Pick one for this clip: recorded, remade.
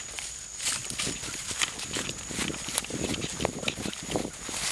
recorded